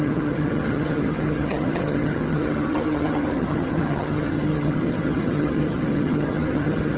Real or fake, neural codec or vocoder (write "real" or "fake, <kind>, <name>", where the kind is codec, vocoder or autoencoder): fake, vocoder, HiFi-GAN